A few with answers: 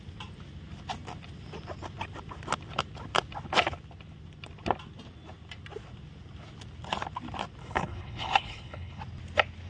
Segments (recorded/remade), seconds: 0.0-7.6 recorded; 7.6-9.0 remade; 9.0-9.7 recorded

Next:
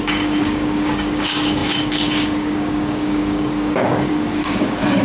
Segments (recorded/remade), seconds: 0.0-5.0 remade

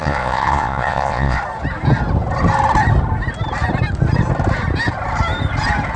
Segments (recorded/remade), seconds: 0.0-1.4 remade; 1.4-6.0 recorded

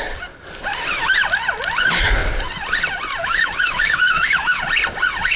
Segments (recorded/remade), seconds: 0.0-3.2 recorded; 3.2-4.6 remade; 4.6-5.4 recorded

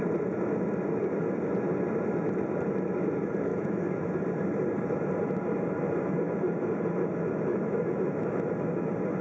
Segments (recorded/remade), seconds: 0.0-3.5 recorded; 3.5-4.1 remade; 4.1-7.5 recorded; 7.5-8.5 remade; 8.5-9.2 recorded

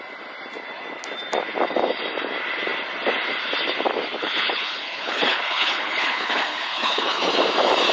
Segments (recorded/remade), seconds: 0.0-4.2 recorded; 4.2-7.3 remade; 7.3-7.9 recorded

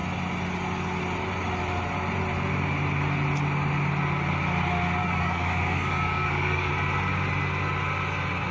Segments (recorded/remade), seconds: 0.0-5.0 recorded; 5.0-6.7 remade; 6.7-8.5 recorded

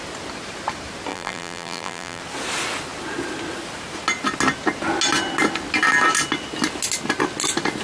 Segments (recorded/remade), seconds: 0.0-1.1 recorded; 1.1-2.2 remade; 2.2-7.8 recorded